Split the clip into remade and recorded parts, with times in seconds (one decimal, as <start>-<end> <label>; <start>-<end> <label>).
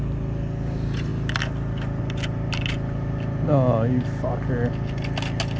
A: 0.0-5.6 recorded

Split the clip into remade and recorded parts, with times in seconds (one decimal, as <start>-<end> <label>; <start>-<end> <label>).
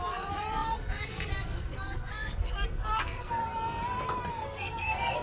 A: 0.0-3.4 remade; 3.4-4.3 recorded; 4.3-5.2 remade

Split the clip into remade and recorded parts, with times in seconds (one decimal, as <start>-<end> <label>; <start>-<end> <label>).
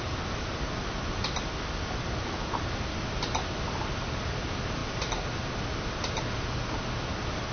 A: 0.0-7.5 recorded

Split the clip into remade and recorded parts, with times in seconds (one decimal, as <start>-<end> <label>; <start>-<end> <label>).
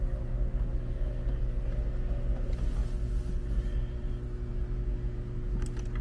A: 0.0-6.0 recorded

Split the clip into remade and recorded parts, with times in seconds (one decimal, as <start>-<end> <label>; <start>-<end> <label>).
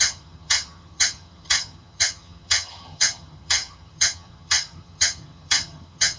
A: 0.0-6.2 remade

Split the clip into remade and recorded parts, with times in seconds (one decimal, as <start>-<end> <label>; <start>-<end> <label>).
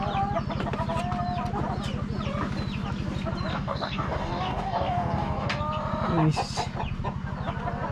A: 0.0-3.5 recorded; 3.5-5.6 remade; 5.6-7.9 recorded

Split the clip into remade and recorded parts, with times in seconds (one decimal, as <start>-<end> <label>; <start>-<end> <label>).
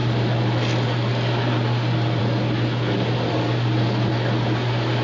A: 0.0-2.2 remade; 2.2-5.0 recorded